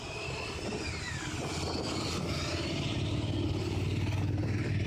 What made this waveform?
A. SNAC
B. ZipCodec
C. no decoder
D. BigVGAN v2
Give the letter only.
C